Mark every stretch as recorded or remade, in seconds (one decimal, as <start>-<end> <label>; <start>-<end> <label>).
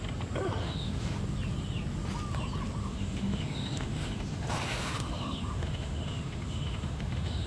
0.0-0.6 recorded; 0.6-1.2 remade; 1.2-2.8 recorded; 2.8-7.5 remade